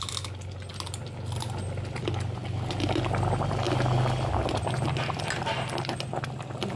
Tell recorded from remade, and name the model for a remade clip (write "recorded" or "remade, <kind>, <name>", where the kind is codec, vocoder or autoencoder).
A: recorded